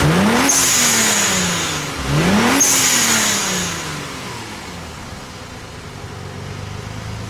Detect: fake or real real